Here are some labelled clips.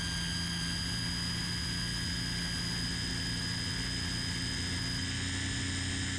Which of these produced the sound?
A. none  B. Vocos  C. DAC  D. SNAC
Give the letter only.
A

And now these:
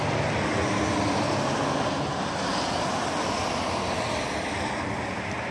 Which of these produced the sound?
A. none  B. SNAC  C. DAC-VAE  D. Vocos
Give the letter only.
A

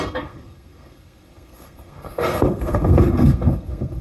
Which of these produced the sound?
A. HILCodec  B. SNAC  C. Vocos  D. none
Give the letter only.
B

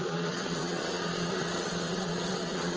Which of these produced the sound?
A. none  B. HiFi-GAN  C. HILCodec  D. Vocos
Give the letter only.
D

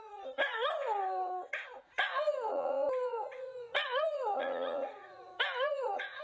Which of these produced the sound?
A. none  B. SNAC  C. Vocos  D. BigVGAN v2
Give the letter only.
C